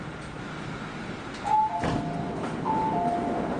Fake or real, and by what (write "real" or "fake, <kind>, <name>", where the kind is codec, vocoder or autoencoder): real